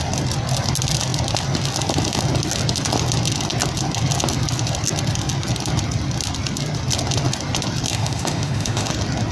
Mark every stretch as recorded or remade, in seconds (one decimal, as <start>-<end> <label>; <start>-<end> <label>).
0.0-7.9 recorded; 7.9-8.9 remade; 8.9-9.3 recorded